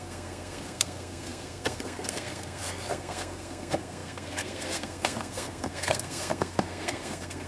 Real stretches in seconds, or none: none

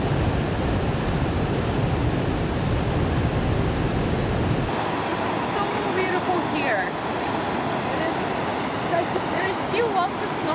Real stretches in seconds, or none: 0.0-10.5

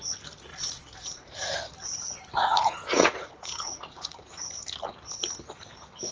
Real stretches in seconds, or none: 0.0-0.5; 1.6-2.5; 4.6-6.1

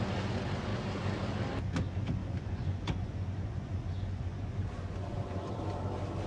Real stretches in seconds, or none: 0.0-2.2; 5.5-6.3